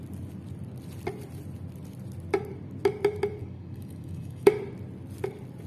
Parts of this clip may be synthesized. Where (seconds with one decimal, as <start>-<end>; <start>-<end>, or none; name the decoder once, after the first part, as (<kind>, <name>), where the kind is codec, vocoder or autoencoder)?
3.4-4.5 (codec, DAC)